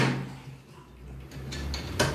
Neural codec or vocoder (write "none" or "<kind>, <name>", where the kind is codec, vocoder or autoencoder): none